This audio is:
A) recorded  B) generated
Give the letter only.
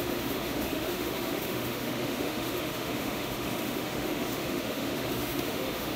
B